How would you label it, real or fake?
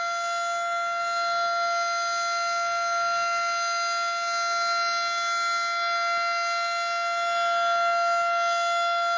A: real